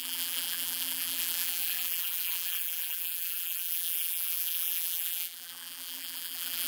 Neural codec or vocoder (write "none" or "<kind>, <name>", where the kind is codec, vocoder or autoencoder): vocoder, BigVGAN v2